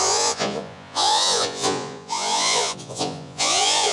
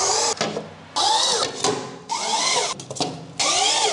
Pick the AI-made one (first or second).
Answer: first